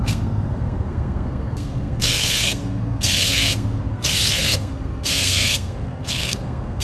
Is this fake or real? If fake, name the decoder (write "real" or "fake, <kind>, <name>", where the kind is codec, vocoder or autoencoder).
fake, codec, SNAC